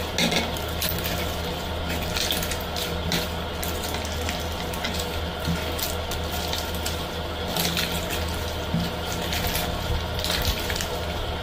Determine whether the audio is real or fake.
real